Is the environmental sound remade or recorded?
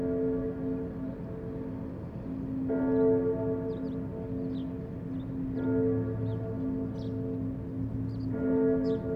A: recorded